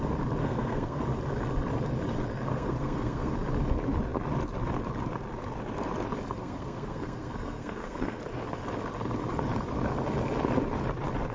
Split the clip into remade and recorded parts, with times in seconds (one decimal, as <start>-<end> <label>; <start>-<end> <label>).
0.0-0.4 recorded; 0.4-1.0 remade; 1.0-2.5 recorded; 2.5-3.3 remade; 3.3-6.4 recorded; 6.4-8.2 remade; 8.2-11.3 recorded